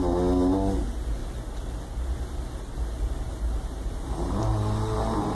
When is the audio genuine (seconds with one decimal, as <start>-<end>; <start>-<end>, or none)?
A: 0.0-1.2; 4.4-5.3